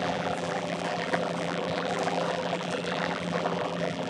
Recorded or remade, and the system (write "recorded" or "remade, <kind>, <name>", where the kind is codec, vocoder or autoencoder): remade, vocoder, BigVGAN v2